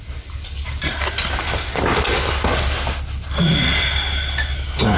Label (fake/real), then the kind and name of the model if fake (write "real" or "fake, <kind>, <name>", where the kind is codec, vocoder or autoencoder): real